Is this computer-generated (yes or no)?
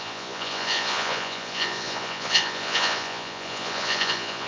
yes